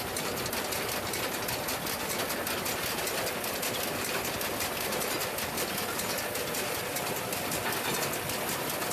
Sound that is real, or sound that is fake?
real